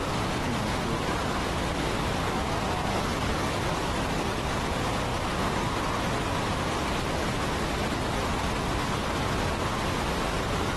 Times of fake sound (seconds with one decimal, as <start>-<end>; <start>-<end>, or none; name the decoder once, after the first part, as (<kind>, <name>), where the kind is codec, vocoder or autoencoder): 2.8-4.5 (codec, DAC)